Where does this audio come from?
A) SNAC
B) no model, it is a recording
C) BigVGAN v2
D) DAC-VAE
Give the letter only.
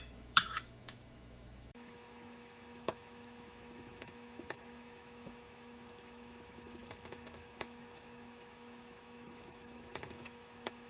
D